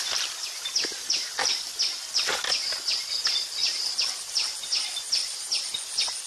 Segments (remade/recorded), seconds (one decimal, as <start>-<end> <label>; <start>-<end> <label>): 0.0-3.6 recorded; 3.6-4.7 remade; 4.7-6.3 recorded